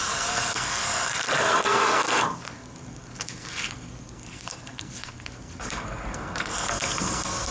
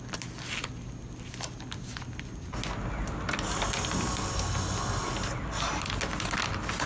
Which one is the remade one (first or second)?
first